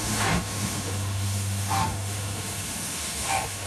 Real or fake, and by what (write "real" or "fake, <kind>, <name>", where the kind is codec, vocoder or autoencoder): fake, autoencoder, DAC-VAE